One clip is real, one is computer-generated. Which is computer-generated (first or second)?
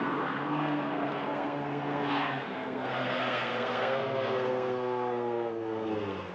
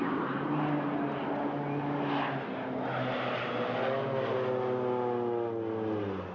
first